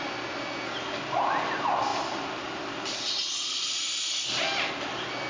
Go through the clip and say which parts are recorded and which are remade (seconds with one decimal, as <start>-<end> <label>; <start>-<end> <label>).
0.0-5.3 recorded